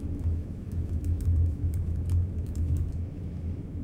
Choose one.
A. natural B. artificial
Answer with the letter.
B